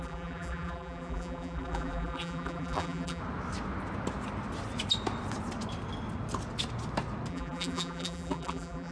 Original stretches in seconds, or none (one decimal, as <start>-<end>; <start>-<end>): 3.2-7.3